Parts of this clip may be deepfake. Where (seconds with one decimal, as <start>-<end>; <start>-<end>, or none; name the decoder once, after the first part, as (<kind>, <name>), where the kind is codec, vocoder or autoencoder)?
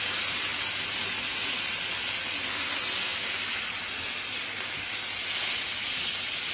none